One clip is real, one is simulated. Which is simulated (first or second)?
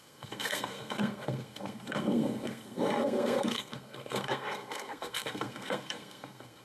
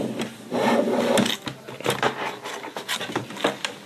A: first